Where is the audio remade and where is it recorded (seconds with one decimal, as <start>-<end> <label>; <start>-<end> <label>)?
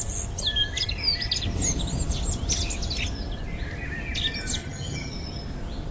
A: 0.0-4.6 recorded; 4.6-5.1 remade; 5.1-5.9 recorded